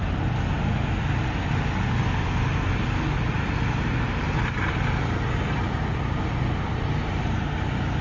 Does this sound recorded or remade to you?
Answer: recorded